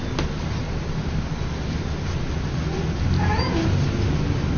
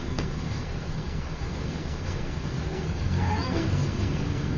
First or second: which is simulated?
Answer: second